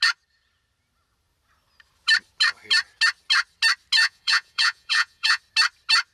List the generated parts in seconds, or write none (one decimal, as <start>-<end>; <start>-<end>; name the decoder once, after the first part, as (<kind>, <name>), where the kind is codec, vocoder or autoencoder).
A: 4.0-5.4 (vocoder, Vocos)